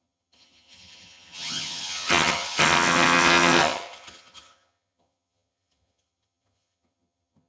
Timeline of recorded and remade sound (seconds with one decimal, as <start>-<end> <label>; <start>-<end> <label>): 0.0-7.5 remade